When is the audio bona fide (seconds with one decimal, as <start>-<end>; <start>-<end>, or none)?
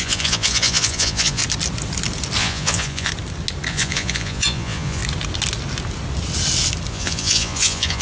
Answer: 1.4-2.4; 3.1-3.7; 5.0-6.9